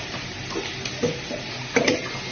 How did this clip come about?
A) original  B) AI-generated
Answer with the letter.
A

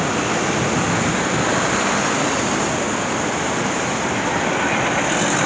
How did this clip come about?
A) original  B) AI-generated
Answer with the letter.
A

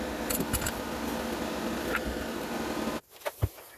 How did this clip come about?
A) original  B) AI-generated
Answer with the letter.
A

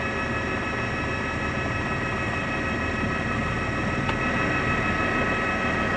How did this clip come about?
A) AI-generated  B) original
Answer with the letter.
B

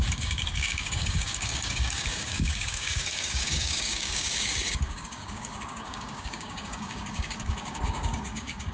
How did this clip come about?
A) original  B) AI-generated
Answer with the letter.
B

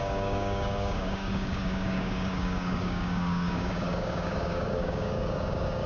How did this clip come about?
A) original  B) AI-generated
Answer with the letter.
B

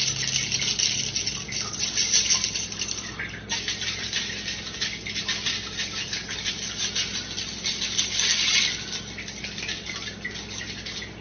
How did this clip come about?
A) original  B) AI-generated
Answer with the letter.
A